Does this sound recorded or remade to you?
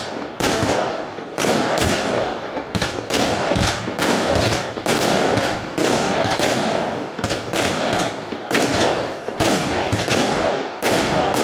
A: remade